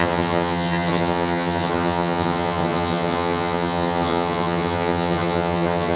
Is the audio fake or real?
fake